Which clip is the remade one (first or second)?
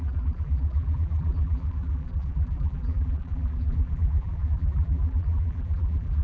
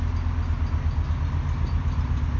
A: first